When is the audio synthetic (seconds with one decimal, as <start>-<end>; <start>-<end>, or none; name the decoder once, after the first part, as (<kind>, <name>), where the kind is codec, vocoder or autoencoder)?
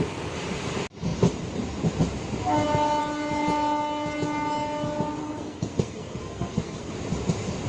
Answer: 5.2-6.9 (codec, SNAC)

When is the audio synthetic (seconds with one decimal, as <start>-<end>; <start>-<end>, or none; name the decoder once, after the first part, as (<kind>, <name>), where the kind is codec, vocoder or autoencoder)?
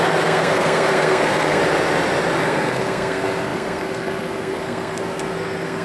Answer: 0.0-1.6 (codec, SNAC); 2.4-5.8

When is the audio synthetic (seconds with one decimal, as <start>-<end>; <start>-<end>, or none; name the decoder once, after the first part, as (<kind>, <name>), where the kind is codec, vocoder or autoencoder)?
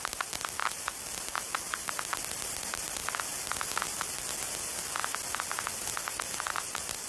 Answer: none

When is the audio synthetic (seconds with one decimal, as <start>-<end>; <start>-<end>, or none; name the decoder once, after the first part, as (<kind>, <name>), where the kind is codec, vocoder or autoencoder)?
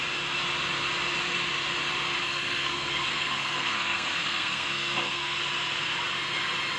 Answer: 2.2-5.4 (codec, SNAC)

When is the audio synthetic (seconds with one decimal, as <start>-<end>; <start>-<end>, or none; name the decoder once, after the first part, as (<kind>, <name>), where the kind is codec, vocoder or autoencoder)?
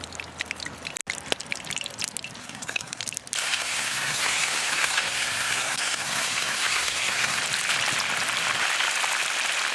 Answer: 2.4-3.0 (codec, SNAC); 3.4-7.4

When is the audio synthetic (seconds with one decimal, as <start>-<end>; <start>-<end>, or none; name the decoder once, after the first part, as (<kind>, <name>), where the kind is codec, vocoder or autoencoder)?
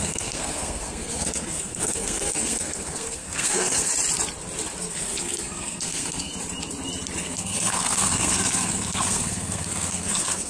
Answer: 0.0-3.9 (codec, SNAC); 4.8-6.3; 7.2-10.5